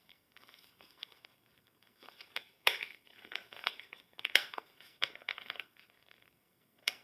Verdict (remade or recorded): remade